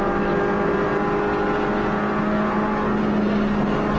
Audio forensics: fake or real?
real